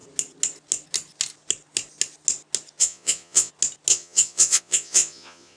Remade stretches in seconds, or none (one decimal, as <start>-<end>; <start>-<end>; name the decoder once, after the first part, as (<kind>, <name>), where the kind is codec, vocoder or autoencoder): 2.8-3.5 (vocoder, Vocos); 3.9-5.6